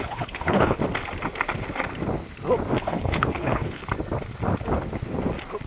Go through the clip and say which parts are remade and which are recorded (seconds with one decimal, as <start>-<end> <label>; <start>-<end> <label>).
0.0-0.8 remade; 0.8-2.8 recorded; 2.8-3.8 remade; 3.8-5.7 recorded